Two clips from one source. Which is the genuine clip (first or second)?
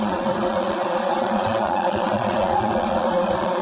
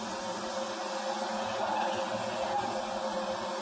second